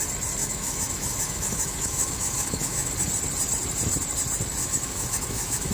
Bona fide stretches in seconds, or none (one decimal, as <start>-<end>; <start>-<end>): 0.0-0.4; 2.9-4.6